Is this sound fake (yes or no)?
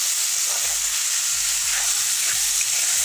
no